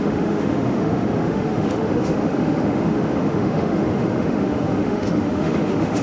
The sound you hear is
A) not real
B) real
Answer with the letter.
A